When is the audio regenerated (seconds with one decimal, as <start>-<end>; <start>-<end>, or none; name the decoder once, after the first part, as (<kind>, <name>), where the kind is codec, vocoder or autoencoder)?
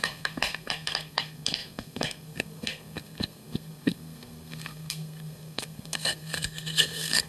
0.0-7.3 (codec, SNAC)